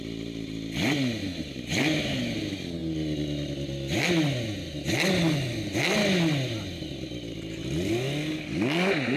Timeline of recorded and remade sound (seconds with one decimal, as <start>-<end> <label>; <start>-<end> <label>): 0.0-1.2 recorded; 1.2-2.2 remade; 2.2-9.2 recorded